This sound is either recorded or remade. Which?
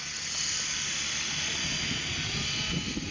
recorded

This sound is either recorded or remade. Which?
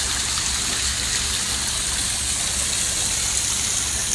recorded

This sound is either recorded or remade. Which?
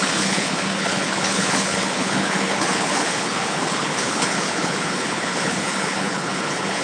remade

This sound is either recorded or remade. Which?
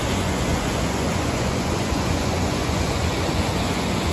remade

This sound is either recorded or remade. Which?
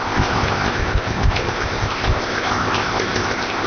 remade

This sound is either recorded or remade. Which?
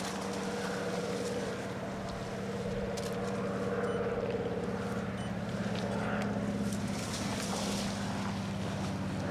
recorded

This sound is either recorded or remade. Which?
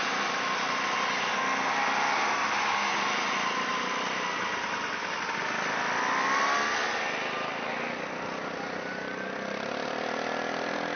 recorded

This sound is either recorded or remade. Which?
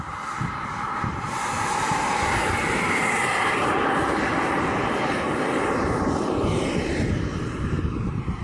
remade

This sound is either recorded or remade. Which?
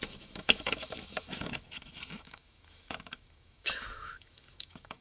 remade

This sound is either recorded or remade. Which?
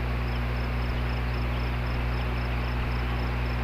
recorded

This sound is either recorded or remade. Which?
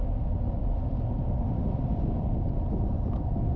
recorded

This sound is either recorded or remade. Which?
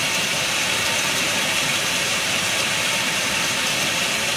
remade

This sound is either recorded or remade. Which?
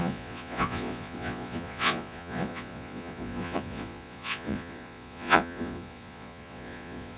remade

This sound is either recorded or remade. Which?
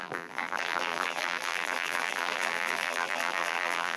remade